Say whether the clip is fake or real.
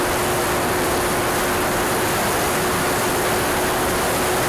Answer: real